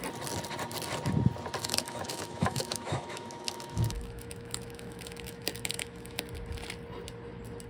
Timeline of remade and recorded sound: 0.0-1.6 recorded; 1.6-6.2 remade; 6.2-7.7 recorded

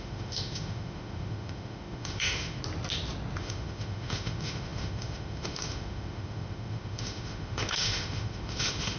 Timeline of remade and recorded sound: 0.0-2.6 remade; 2.6-3.4 recorded; 3.4-9.0 remade

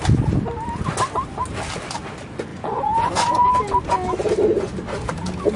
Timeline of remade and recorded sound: 0.0-2.5 recorded; 2.5-3.5 remade; 3.5-5.6 recorded

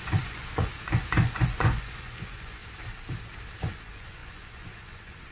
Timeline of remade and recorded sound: 0.0-2.6 remade; 2.6-3.6 recorded; 3.6-5.3 remade

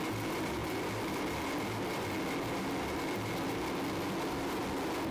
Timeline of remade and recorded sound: 0.0-5.1 recorded